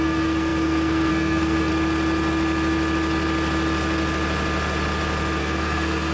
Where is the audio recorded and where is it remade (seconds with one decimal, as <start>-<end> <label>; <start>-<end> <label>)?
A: 0.0-1.7 remade; 1.7-5.4 recorded; 5.4-6.1 remade